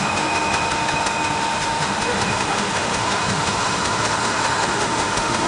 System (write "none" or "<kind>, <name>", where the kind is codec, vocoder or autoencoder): autoencoder, DAC-VAE